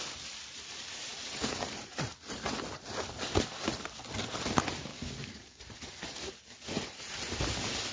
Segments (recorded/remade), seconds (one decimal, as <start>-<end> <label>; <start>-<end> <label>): 0.0-4.9 recorded; 4.9-5.6 remade; 5.6-7.9 recorded